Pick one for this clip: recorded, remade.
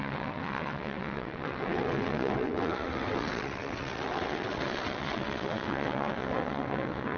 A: remade